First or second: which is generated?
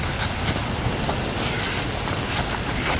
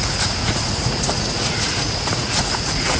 second